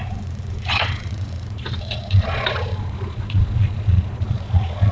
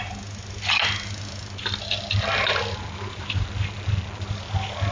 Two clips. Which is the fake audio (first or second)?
first